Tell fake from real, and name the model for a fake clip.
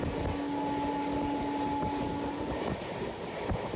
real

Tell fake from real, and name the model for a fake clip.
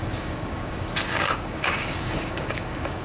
fake, codec, DAC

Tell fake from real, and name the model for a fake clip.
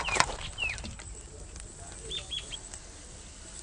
real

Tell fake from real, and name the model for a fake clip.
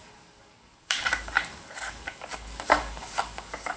fake, codec, DAC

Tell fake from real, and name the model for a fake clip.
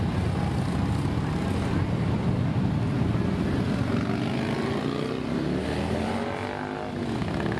real